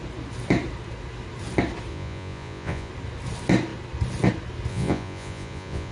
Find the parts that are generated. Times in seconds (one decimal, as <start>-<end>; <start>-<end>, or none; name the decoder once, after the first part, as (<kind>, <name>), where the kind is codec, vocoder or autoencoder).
1.9-2.9 (vocoder, Vocos); 4.7-5.9